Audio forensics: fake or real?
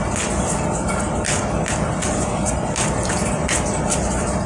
real